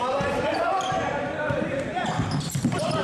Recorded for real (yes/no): no